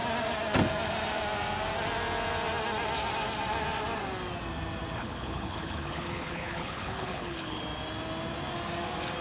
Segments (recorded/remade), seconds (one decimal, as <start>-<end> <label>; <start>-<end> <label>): 0.0-5.0 recorded; 5.0-7.6 remade; 7.6-9.2 recorded